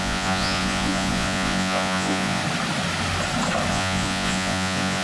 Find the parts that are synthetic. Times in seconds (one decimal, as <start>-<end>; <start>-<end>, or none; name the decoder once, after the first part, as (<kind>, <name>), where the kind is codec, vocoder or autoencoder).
0.0-2.4 (vocoder, Vocos); 3.7-5.0

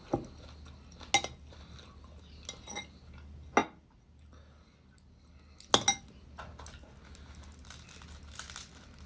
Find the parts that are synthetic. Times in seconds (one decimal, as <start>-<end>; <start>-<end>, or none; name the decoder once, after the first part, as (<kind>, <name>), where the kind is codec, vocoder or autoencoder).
none

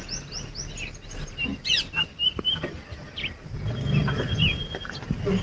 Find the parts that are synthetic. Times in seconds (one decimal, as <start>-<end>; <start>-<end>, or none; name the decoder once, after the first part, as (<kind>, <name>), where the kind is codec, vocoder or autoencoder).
none

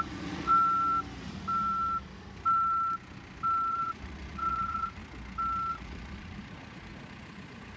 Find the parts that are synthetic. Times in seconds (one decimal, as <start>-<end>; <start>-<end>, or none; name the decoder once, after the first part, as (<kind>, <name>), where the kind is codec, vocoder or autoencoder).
0.0-0.5 (vocoder, Vocos); 3.7-5.0; 5.7-7.8

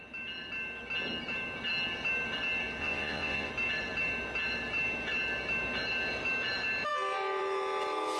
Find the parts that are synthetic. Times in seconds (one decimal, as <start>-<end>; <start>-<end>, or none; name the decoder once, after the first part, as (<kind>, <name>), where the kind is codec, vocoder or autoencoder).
2.8-3.5 (vocoder, Vocos)